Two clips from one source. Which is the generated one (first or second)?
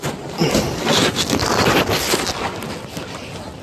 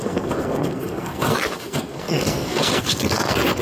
second